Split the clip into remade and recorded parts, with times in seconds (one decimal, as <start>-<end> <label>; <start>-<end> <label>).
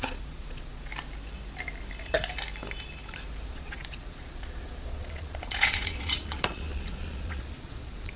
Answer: 0.0-0.9 remade; 0.9-3.5 recorded; 3.5-8.2 remade